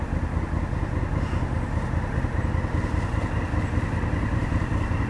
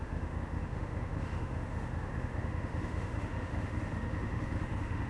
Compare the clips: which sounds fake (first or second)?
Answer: second